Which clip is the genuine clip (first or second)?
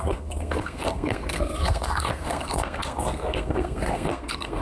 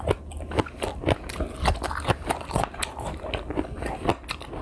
second